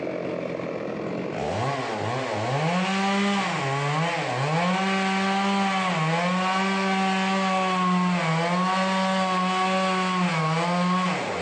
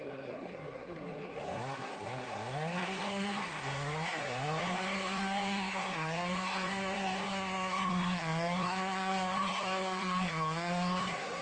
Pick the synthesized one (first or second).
second